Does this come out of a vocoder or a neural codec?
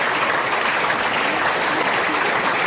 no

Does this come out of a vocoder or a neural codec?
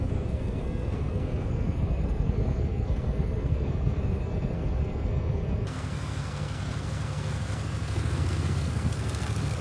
yes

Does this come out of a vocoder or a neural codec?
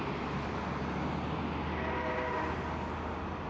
no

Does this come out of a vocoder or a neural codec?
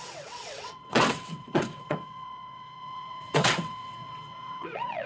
yes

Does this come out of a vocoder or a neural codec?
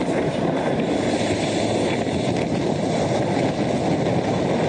no